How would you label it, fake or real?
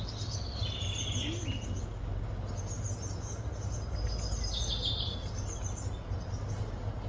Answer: real